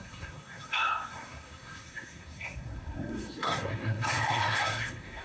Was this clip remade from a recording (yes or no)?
yes